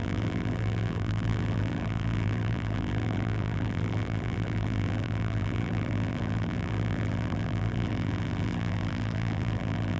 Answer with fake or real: fake